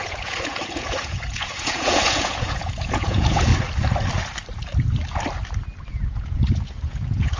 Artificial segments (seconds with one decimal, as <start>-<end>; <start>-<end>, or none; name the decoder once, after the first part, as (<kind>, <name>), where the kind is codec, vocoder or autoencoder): 0.0-3.5 (vocoder, Vocos); 5.9-7.4